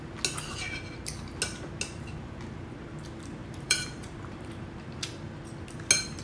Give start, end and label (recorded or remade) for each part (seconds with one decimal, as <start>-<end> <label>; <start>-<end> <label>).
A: 0.0-3.4 recorded; 3.4-4.5 remade; 4.5-6.2 recorded